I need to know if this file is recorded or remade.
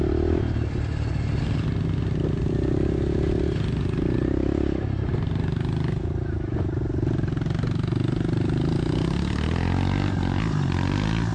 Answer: recorded